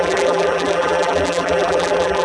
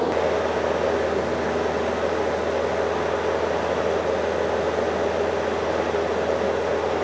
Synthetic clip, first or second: first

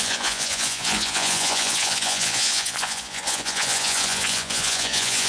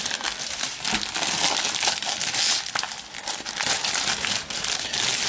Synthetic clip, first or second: first